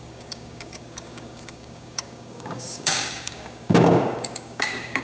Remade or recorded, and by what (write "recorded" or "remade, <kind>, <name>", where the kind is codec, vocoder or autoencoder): remade, codec, DAC